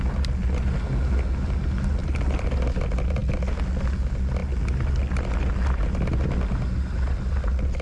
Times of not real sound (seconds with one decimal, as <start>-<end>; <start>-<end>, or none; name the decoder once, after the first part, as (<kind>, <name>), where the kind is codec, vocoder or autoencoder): none